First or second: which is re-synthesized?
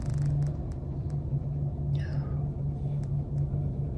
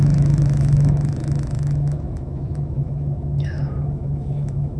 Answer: second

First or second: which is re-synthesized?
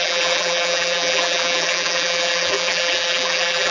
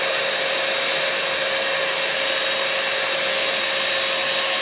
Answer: first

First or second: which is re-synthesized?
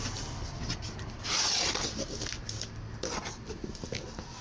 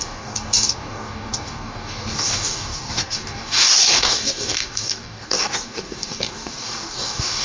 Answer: second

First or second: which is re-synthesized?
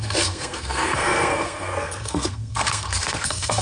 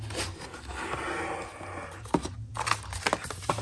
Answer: first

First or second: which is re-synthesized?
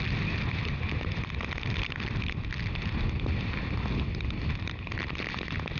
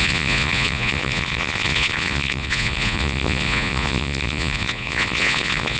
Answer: second